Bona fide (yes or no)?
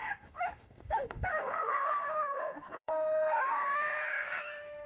no